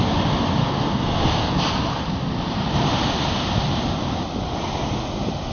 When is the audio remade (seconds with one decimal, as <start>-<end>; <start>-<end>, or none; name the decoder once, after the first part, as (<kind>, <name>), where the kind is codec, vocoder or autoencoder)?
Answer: 0.6-1.5 (codec, SNAC)